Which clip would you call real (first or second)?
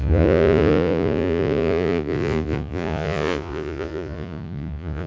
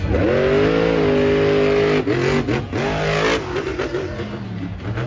second